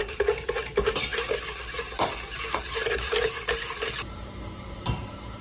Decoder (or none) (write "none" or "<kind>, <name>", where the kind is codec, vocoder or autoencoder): vocoder, BigVGAN v2